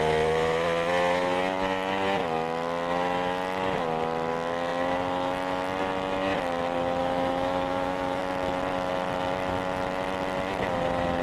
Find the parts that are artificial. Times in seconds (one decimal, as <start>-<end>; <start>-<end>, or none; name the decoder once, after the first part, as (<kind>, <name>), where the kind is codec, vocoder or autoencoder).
7.0-8.2 (autoencoder, DAC-VAE)